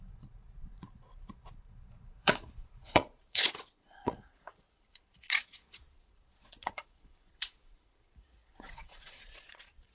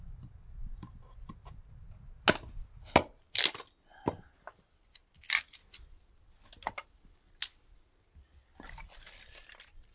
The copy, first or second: first